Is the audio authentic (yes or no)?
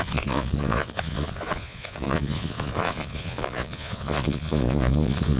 no